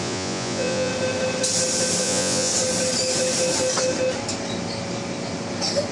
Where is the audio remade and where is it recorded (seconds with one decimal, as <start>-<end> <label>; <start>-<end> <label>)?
0.0-0.9 remade; 0.9-2.0 recorded; 2.0-2.5 remade; 2.5-5.9 recorded